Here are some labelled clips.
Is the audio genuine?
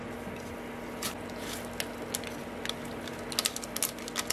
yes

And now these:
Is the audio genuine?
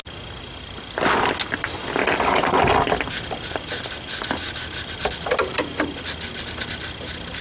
yes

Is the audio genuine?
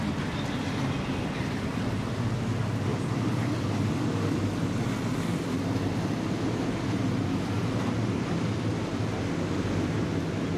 yes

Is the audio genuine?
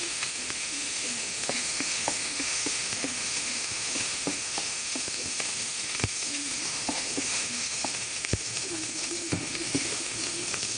no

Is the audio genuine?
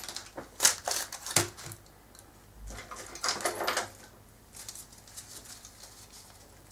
yes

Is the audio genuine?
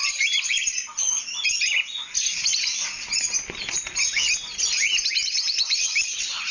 yes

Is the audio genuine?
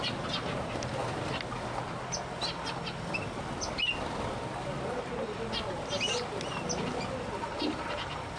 yes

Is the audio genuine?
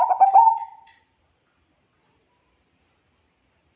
yes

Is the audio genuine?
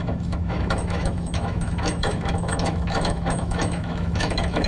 no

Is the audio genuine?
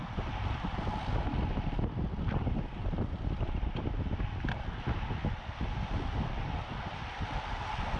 yes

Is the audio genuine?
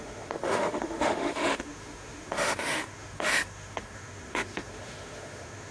no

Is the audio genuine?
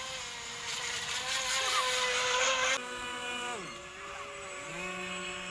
yes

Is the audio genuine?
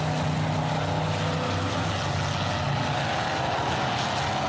yes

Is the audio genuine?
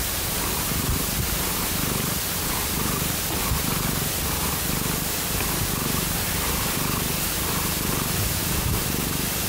yes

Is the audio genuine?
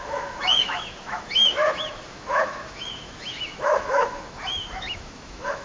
no